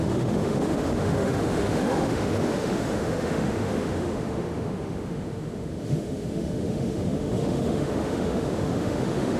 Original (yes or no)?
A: no